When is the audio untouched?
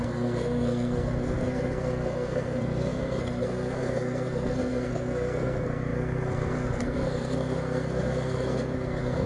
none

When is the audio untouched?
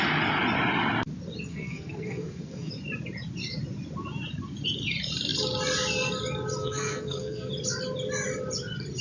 0.0-1.5; 2.7-6.6; 7.5-9.0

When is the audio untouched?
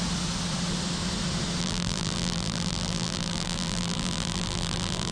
0.0-1.6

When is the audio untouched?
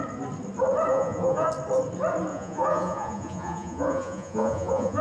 0.0-0.9; 1.5-2.3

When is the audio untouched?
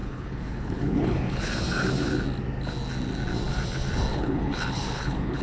1.5-4.1